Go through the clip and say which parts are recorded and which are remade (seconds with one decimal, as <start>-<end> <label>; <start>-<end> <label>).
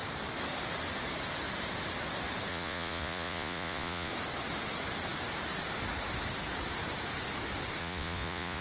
0.0-2.5 recorded; 2.5-4.1 remade; 4.1-7.8 recorded; 7.8-8.6 remade